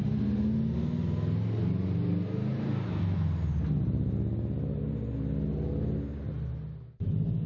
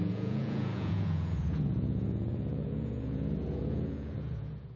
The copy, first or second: second